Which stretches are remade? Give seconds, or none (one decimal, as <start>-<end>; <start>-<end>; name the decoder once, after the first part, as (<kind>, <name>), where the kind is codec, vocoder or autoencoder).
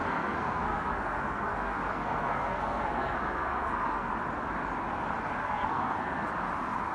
0.0-4.1 (codec, SNAC); 5.4-6.3